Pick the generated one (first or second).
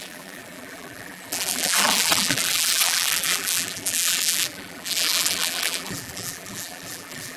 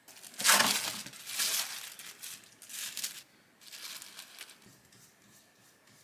first